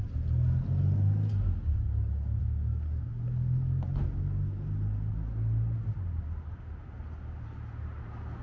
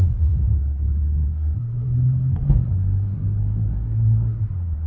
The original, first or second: first